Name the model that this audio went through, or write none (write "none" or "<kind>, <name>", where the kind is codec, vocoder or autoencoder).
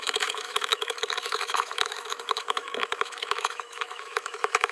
autoencoder, DAC-VAE